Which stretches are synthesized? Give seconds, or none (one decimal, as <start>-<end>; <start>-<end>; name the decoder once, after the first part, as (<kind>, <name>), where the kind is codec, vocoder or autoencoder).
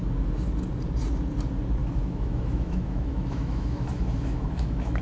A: 1.8-5.0 (autoencoder, DAC-VAE)